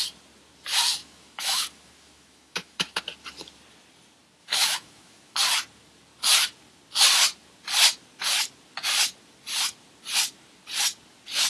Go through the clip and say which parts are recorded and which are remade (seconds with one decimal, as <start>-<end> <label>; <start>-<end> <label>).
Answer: 0.0-1.0 recorded; 1.0-3.0 remade; 3.0-4.4 recorded; 4.4-5.4 remade; 5.4-11.5 recorded

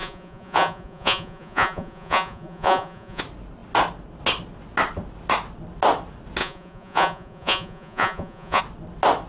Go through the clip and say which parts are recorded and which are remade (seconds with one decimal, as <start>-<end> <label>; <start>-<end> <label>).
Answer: 0.0-3.2 remade; 3.2-6.4 recorded; 6.4-8.6 remade; 8.6-9.3 recorded

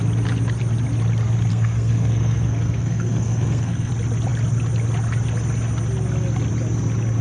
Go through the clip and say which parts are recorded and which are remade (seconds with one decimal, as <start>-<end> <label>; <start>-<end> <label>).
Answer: 0.0-1.5 recorded; 1.5-3.9 remade; 3.9-7.2 recorded

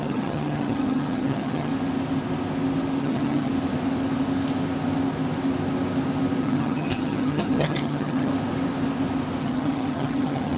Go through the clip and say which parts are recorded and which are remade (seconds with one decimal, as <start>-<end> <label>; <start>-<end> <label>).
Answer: 0.0-1.7 remade; 1.7-3.0 recorded; 3.0-3.5 remade; 3.5-6.4 recorded; 6.4-8.3 remade; 8.3-9.4 recorded; 9.4-10.6 remade

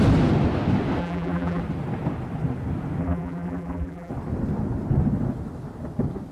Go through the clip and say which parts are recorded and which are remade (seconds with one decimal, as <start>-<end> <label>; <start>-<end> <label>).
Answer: 0.0-1.0 recorded; 1.0-1.6 remade; 1.6-3.0 recorded; 3.0-4.1 remade; 4.1-6.3 recorded

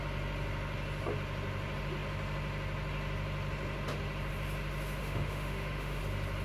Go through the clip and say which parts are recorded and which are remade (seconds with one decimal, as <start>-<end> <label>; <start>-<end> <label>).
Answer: 0.0-5.0 recorded; 5.0-6.0 remade; 6.0-6.4 recorded